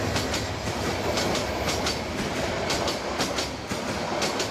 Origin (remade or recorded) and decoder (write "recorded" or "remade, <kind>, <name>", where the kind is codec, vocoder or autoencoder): recorded